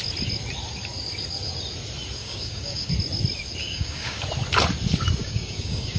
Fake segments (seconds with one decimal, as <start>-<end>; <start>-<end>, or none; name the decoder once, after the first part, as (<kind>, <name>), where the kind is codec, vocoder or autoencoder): 2.2-2.9 (codec, DAC); 3.6-4.2; 5.2-6.0